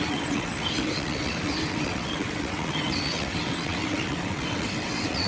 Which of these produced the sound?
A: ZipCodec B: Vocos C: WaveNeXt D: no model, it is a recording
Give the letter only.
C